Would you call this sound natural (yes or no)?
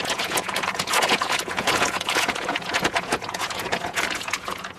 no